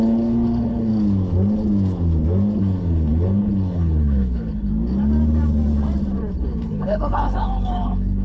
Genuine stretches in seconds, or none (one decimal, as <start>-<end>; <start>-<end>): 0.9-2.6; 4.7-6.3

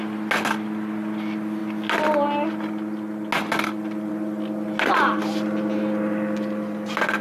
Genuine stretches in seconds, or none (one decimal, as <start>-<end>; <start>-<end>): 0.0-7.2